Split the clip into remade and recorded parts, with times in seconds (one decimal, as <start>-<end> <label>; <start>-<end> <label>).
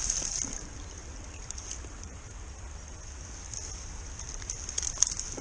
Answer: 0.0-5.4 recorded